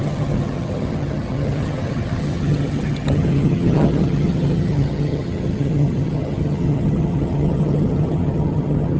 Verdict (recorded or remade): remade